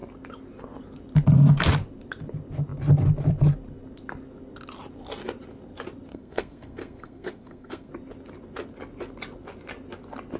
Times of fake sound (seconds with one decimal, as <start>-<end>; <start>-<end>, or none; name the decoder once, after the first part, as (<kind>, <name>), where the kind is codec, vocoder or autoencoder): 6.1-7.9 (codec, SNAC)